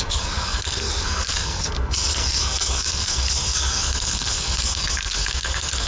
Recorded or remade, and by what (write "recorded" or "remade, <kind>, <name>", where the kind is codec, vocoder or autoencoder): remade, codec, SNAC